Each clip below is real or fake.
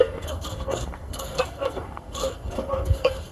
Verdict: fake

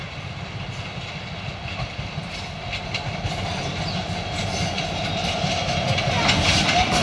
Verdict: real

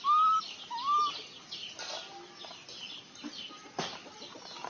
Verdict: real